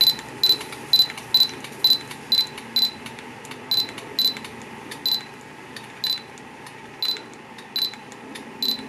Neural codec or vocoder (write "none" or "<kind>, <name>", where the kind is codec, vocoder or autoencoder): none